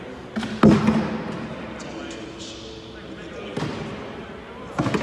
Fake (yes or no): no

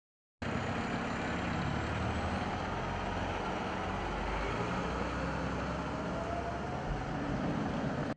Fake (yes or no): no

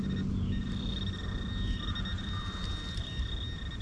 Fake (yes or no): no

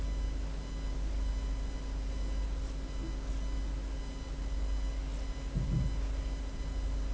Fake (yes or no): no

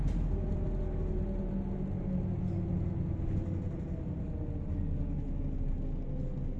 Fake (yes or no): no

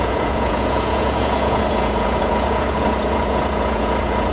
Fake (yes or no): yes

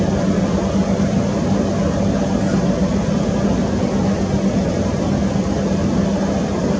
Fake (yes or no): no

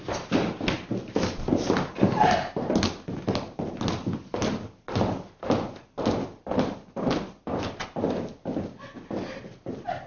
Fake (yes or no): no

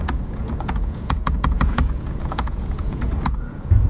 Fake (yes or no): yes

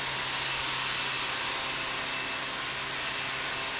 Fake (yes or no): no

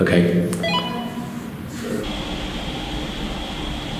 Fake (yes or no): no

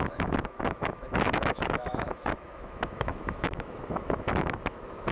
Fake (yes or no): yes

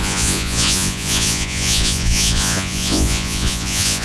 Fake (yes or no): yes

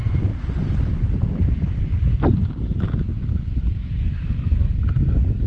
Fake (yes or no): no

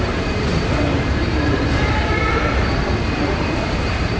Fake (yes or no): yes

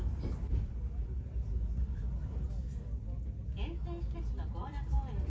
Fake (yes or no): no